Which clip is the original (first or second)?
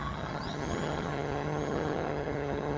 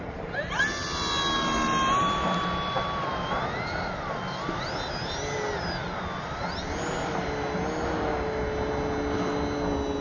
second